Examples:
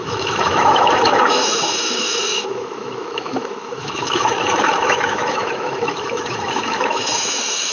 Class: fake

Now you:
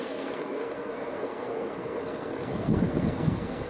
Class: fake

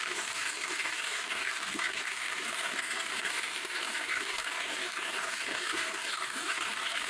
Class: fake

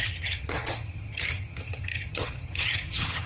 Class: fake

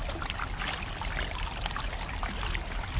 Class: fake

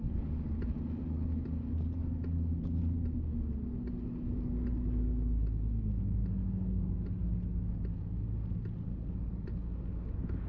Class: real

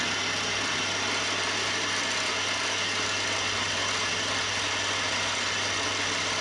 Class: real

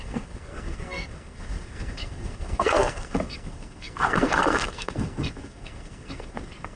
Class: fake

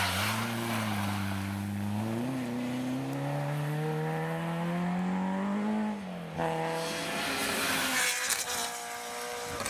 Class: real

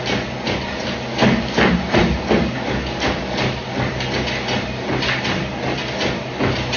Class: real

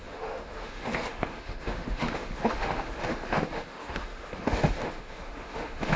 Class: fake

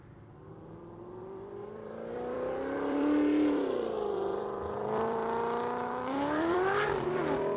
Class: fake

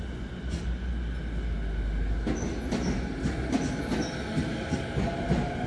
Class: real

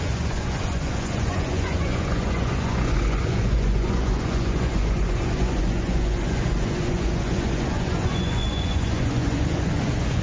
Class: fake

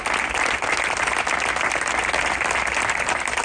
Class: real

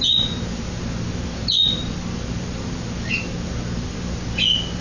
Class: real